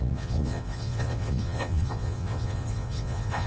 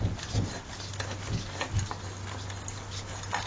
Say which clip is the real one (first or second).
second